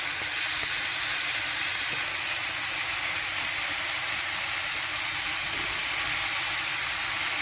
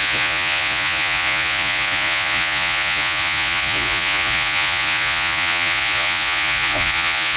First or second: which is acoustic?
first